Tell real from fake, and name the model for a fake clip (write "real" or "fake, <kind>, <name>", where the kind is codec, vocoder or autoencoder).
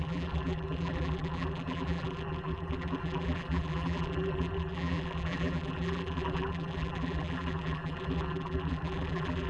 fake, vocoder, BigVGAN v2